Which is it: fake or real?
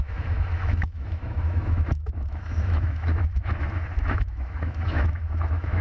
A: fake